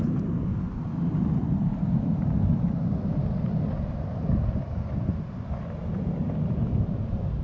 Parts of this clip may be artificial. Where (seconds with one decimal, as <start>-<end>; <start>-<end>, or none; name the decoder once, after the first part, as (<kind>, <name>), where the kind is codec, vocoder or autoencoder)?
none